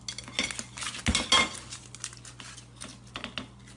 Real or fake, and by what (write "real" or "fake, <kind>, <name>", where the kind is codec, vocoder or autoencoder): real